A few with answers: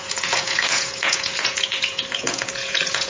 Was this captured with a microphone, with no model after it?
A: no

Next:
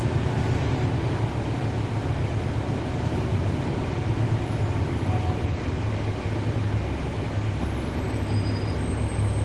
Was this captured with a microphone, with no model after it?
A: yes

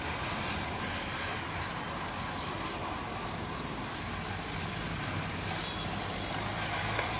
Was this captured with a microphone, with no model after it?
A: yes